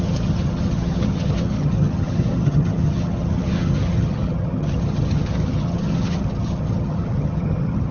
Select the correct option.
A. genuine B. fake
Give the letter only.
B